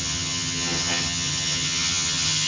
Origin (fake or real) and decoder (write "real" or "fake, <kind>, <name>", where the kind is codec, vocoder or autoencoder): fake, vocoder, HiFi-GAN